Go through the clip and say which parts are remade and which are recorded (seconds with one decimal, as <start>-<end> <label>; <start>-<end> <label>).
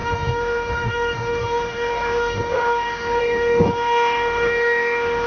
0.0-5.3 remade